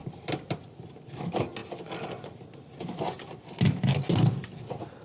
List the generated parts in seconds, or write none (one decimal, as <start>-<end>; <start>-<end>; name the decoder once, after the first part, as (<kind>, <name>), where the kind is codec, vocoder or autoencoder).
none